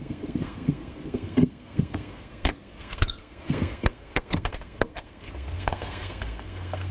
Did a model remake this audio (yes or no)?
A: yes